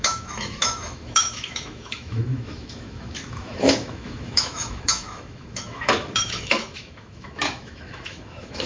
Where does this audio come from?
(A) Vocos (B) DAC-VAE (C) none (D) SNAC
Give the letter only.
B